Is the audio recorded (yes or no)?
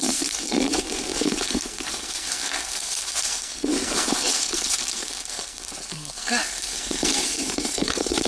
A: no